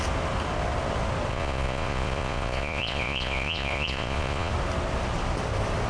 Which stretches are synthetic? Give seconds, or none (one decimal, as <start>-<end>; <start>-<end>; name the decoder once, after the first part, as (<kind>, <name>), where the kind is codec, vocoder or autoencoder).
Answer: 1.3-4.5 (vocoder, Vocos)